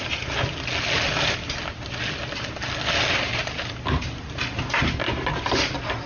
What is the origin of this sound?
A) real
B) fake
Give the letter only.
A